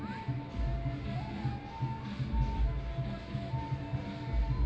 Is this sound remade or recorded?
recorded